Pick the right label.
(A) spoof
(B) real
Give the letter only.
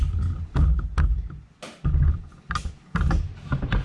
B